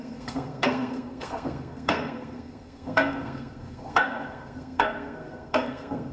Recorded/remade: remade